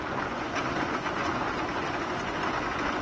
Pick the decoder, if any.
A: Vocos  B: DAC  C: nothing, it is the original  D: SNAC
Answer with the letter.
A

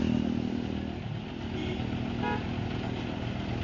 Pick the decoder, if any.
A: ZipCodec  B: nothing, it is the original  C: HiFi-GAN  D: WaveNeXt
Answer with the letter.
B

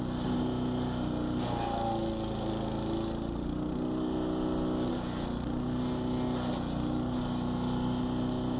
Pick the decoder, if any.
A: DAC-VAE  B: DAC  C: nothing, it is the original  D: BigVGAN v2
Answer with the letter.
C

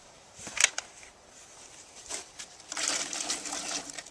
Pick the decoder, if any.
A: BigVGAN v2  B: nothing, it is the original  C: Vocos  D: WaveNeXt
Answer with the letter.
A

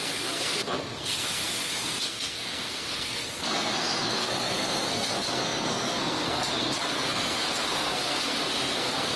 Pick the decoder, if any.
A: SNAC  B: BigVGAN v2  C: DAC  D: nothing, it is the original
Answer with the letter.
A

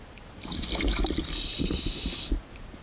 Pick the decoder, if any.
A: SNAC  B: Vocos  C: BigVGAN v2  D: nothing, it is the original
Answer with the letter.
D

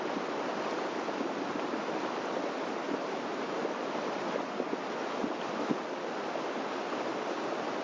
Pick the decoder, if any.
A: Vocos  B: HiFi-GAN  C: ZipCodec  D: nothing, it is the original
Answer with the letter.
D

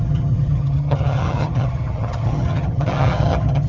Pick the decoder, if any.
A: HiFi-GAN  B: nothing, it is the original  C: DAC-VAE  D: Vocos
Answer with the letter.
A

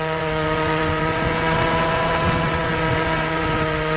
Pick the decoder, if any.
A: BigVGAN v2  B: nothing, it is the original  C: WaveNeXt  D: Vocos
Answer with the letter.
C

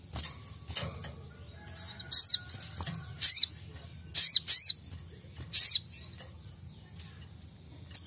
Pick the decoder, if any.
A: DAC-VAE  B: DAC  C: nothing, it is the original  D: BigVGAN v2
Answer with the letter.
C